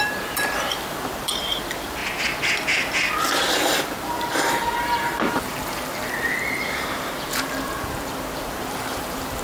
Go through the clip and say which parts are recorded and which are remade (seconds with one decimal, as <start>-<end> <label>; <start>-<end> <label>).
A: 0.0-2.0 remade; 2.0-3.5 recorded; 3.5-9.4 remade